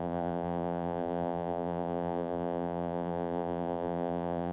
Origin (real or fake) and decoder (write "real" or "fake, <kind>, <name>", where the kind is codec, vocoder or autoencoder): fake, vocoder, BigVGAN v2